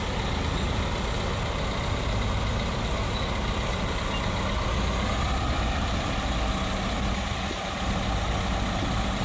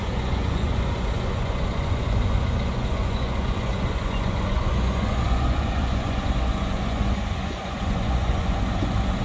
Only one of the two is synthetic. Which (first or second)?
second